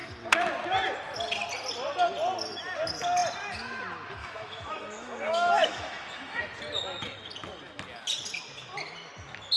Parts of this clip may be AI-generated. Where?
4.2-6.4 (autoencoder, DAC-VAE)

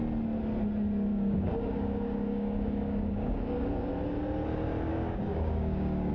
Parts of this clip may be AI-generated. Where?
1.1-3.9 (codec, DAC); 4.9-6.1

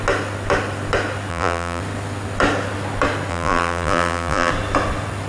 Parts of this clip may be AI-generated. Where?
1.3-1.8 (vocoder, BigVGAN v2); 3.3-4.5

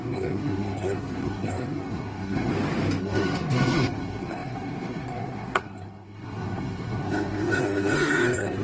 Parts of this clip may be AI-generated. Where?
0.0-2.5 (codec, SNAC); 3.0-8.6

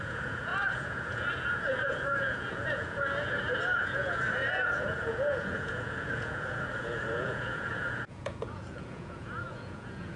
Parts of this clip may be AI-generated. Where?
0.0-10.2 (vocoder, Vocos)

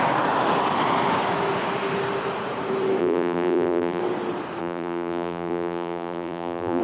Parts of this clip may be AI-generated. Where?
3.0-4.0 (vocoder, BigVGAN v2); 4.6-6.8

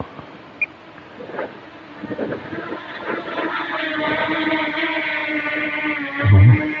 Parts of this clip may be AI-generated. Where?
none

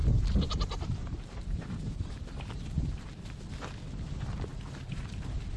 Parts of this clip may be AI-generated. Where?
0.0-3.4 (vocoder, BigVGAN v2); 4.5-5.6